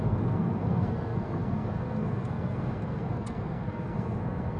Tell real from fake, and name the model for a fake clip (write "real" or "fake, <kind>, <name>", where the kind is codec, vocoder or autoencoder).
fake, codec, SNAC